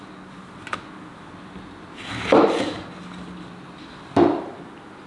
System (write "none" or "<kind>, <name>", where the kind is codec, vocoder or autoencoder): none